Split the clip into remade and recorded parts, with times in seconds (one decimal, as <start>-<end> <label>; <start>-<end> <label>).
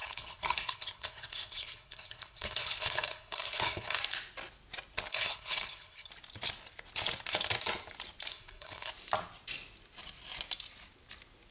0.0-4.0 remade; 4.0-5.1 recorded; 5.1-6.1 remade; 6.1-8.3 recorded; 8.3-8.9 remade; 8.9-11.5 recorded